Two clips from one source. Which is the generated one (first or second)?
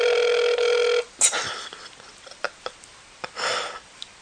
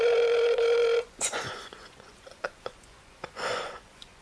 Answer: second